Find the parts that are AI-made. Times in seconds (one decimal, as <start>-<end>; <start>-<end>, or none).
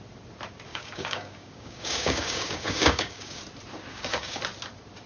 0.7-3.4; 3.9-4.4